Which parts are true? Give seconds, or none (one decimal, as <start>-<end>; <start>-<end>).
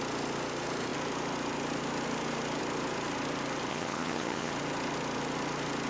0.0-3.7; 4.5-5.9